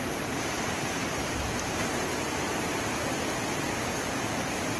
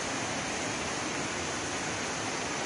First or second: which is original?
second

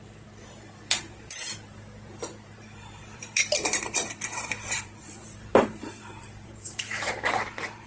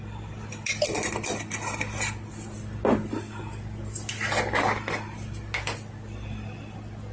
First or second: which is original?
second